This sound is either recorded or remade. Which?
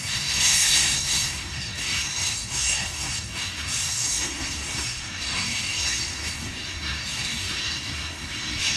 remade